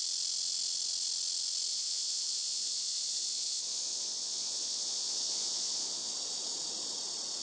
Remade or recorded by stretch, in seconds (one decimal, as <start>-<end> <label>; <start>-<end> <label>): 0.0-1.7 recorded; 1.7-6.1 remade; 6.1-7.4 recorded